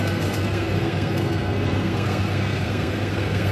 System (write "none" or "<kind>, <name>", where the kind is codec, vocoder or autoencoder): codec, SNAC